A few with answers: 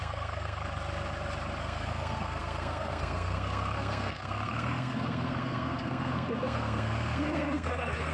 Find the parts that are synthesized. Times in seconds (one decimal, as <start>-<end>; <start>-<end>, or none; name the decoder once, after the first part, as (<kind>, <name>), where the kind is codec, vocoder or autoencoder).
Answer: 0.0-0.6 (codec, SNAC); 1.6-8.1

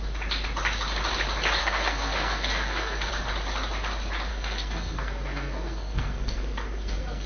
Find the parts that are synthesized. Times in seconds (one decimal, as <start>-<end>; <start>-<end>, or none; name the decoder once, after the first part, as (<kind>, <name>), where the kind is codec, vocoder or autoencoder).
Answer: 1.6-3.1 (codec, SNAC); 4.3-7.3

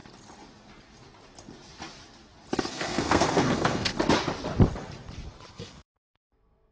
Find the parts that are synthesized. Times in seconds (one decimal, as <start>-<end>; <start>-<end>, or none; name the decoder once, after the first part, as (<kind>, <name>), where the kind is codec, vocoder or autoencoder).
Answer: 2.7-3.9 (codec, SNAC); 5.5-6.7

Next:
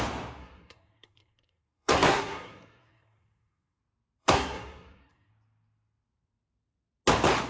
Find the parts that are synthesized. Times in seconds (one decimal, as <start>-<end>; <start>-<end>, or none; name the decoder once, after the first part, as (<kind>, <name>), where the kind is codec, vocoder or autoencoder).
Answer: 0.4-3.8 (codec, SNAC); 4.2-5.3

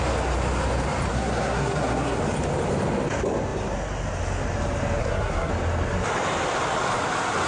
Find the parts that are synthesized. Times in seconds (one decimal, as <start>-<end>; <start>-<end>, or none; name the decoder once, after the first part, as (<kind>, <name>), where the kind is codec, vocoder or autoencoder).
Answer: 1.1-2.2 (codec, SNAC); 5.0-5.5